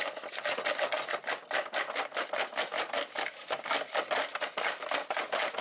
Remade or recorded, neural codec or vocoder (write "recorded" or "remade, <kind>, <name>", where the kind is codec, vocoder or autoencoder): recorded